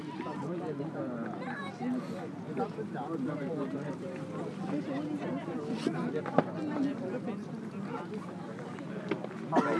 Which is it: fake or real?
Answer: real